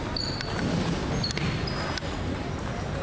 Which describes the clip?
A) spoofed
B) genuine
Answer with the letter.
B